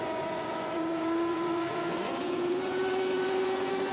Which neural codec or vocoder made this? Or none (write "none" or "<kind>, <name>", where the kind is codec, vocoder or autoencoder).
vocoder, Vocos